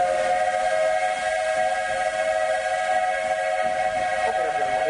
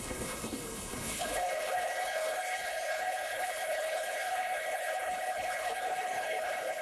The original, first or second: first